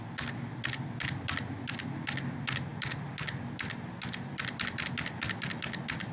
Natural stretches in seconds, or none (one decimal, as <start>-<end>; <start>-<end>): 0.0-6.1